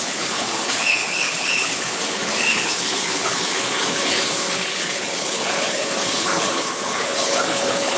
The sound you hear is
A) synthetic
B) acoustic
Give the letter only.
A